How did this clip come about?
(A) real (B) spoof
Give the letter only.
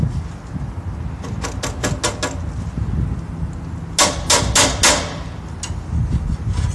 A